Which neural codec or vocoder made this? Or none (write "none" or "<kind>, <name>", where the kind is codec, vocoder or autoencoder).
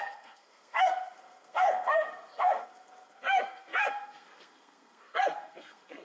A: codec, SNAC